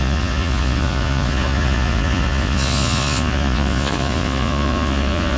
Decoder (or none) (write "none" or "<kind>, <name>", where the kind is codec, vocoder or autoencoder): vocoder, Vocos